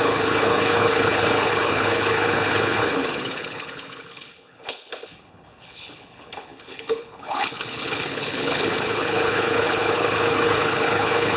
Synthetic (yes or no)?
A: yes